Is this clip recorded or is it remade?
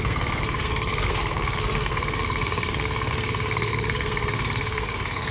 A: remade